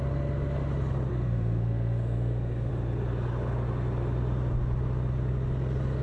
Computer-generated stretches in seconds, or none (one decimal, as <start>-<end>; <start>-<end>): 1.1-2.7